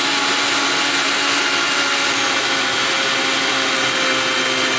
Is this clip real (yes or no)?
yes